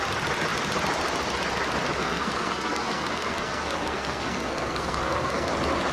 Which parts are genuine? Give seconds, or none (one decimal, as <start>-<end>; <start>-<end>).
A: 0.0-2.0; 5.5-5.9